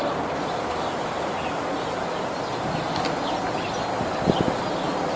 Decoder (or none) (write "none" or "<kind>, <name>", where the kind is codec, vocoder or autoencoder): none